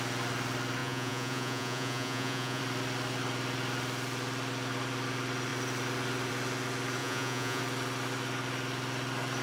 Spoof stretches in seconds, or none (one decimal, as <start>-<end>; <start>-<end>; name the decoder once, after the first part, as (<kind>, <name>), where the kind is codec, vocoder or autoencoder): 0.8-2.6 (vocoder, Vocos); 7.0-7.6